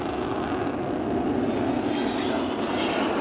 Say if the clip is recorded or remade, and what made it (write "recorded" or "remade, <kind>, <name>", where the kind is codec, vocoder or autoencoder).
recorded